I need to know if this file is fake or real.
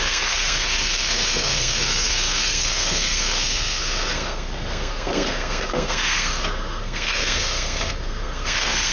fake